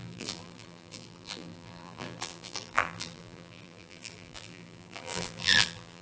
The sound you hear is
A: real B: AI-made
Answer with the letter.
B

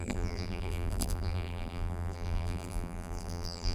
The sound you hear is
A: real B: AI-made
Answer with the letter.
B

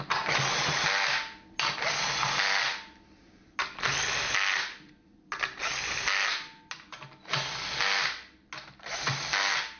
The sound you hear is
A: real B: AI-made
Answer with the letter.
A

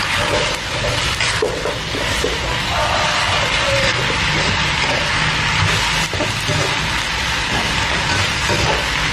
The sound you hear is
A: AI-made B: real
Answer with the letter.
B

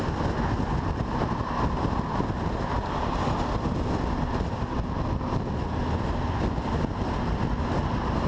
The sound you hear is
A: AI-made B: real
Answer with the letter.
B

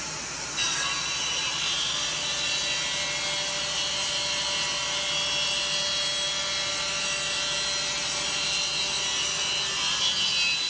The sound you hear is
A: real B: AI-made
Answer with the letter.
A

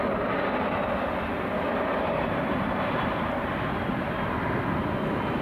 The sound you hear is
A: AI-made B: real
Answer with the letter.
B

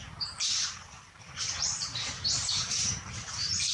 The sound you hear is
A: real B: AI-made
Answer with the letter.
B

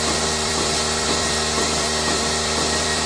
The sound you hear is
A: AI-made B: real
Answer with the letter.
A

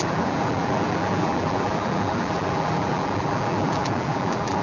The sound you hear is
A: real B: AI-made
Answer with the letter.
B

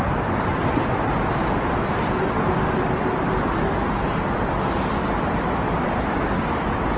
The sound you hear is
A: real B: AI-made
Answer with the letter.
A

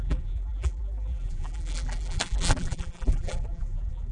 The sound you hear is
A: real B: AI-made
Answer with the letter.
B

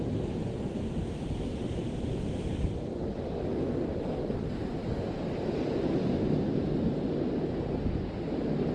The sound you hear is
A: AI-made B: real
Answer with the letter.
B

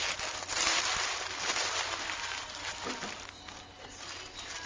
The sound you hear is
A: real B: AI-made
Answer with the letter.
A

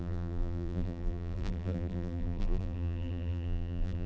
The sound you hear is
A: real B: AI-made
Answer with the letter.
B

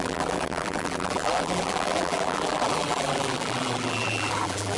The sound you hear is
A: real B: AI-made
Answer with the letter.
B